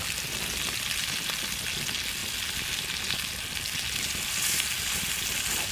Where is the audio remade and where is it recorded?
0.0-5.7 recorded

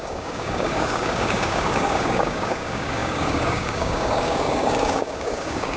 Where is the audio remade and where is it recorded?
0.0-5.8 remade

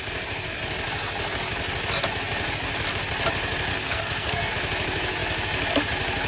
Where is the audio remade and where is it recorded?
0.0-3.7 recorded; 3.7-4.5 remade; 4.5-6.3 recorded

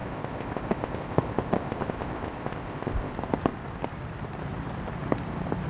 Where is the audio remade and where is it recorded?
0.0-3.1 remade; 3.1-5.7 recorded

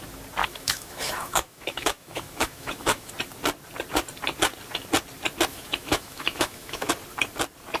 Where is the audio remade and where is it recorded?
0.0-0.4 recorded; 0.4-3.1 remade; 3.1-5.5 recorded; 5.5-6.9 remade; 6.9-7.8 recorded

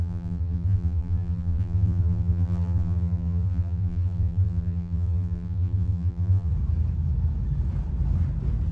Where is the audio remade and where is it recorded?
0.0-6.5 remade; 6.5-8.7 recorded

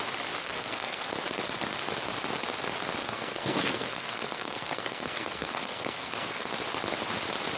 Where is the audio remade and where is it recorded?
0.0-0.4 recorded; 0.4-1.1 remade; 1.1-3.0 recorded; 3.0-6.5 remade; 6.5-7.6 recorded